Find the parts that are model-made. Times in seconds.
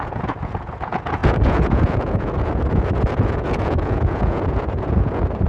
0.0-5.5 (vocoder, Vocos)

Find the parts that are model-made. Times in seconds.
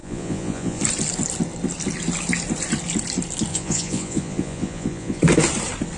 0.0-0.8 (vocoder, Vocos); 3.5-5.2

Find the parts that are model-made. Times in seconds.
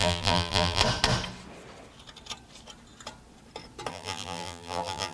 0.0-0.8 (vocoder, BigVGAN v2); 3.9-5.1